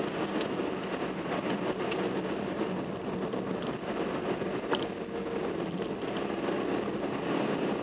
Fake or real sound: real